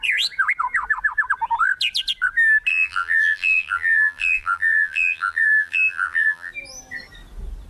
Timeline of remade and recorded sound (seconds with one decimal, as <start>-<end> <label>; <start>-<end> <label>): 0.0-2.7 recorded; 2.7-6.5 remade; 6.5-7.7 recorded